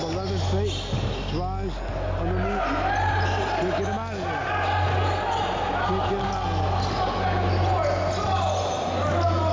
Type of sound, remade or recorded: recorded